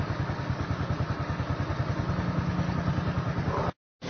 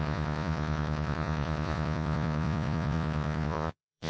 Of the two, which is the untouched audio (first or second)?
first